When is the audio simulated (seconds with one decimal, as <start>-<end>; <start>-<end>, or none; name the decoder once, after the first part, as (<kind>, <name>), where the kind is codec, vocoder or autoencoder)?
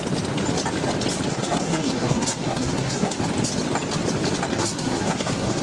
1.3-3.2 (codec, SNAC); 4.5-5.6